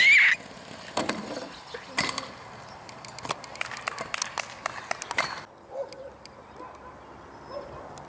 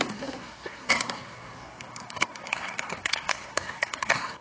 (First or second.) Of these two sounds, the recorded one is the first